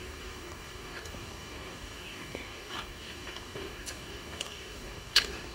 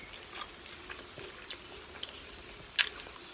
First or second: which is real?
second